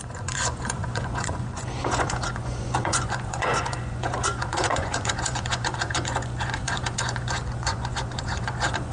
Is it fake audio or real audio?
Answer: fake